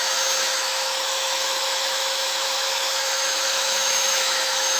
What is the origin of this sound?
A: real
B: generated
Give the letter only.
B